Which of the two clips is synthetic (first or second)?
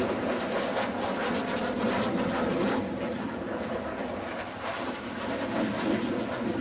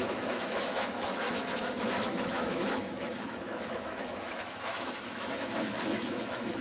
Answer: second